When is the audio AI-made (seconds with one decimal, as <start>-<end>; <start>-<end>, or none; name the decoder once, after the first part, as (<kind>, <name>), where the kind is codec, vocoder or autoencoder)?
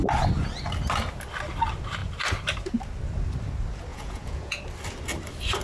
3.9-4.6 (vocoder, Vocos)